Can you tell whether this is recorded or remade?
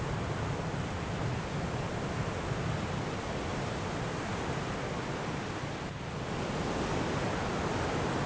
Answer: recorded